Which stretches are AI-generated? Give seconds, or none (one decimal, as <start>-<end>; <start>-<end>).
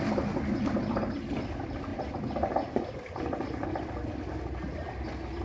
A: none